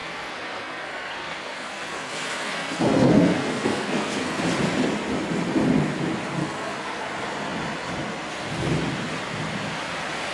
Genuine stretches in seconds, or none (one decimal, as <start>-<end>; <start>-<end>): 4.4-6.4; 7.1-10.3